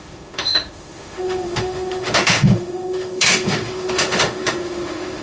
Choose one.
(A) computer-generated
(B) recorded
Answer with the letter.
A